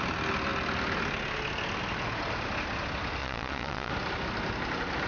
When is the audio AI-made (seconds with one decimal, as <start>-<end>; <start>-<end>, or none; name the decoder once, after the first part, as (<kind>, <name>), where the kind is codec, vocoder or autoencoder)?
3.2-3.9 (vocoder, Vocos)